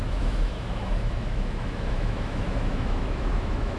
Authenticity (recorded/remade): remade